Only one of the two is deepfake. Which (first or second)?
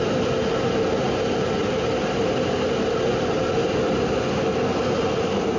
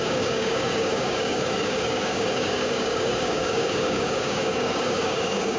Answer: second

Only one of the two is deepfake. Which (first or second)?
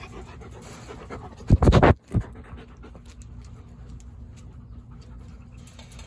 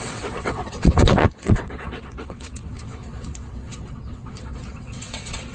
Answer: second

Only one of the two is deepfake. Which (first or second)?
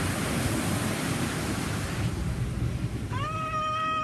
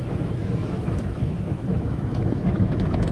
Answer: second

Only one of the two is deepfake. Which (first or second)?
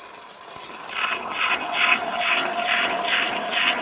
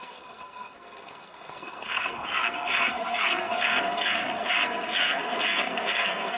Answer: second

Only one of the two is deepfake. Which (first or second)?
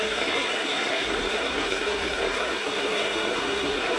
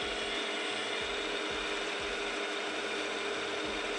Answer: first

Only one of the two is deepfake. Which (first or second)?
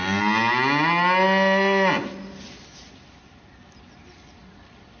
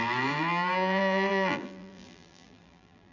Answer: second